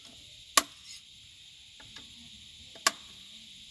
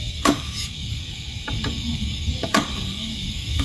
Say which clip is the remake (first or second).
second